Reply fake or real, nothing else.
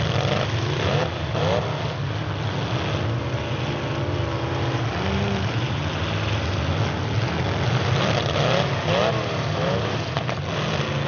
real